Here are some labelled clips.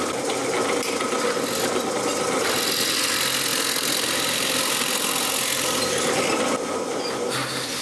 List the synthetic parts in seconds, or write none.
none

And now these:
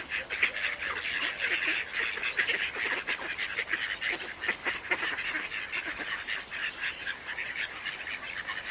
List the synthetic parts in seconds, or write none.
4.6-5.4 (vocoder, BigVGAN v2); 6.6-7.9

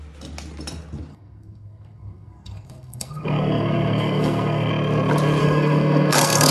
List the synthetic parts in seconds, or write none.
1.1-4.7 (codec, SNAC); 5.4-6.5

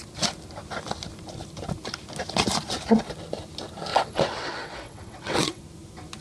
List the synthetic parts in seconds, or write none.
3.9-5.6 (vocoder, WaveNeXt)